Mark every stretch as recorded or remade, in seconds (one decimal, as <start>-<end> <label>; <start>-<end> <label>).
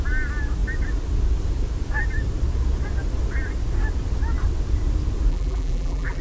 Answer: 0.0-5.3 recorded; 5.3-6.2 remade